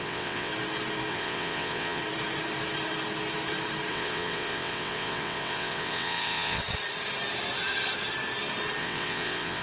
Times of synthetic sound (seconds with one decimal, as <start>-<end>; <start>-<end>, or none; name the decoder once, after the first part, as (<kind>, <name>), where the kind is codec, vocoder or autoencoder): 0.0-0.5 (vocoder, WaveNeXt); 1.1-2.0; 3.9-6.6; 8.8-9.6